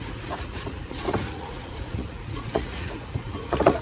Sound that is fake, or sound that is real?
fake